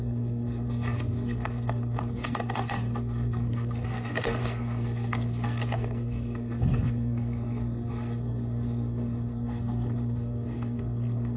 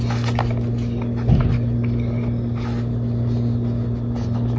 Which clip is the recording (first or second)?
second